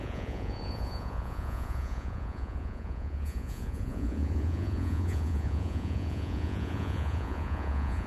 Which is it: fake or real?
fake